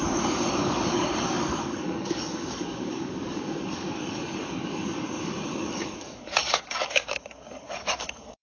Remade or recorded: remade